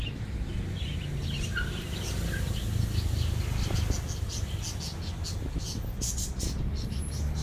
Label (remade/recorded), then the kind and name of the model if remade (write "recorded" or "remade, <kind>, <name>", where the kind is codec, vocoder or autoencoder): recorded